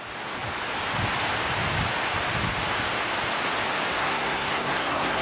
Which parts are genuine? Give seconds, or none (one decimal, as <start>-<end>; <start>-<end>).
0.0-4.0